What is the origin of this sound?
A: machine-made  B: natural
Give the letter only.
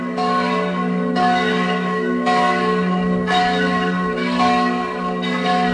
A